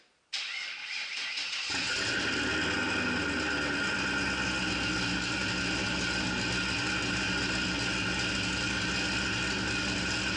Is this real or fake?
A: real